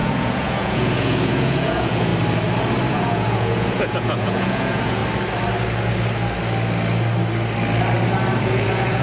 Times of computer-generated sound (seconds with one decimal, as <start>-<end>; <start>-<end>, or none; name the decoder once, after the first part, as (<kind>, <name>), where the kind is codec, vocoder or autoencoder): 0.0-2.1 (vocoder, Vocos); 2.9-5.0; 8.4-9.0